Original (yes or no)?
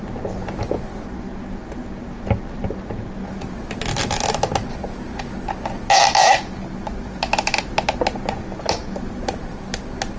yes